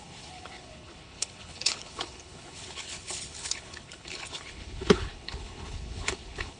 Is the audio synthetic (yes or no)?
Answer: yes